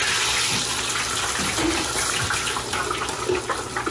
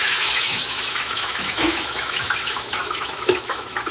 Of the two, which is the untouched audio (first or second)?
first